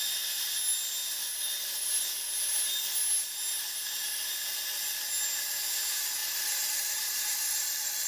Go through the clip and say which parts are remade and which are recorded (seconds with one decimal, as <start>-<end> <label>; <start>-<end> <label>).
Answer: 0.0-1.2 recorded; 1.2-2.0 remade; 2.0-6.2 recorded; 6.2-8.1 remade